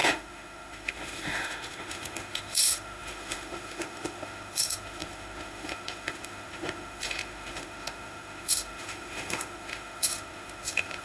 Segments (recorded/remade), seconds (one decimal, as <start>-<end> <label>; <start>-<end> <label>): 0.0-11.0 remade